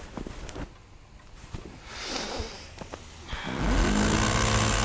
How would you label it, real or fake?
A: real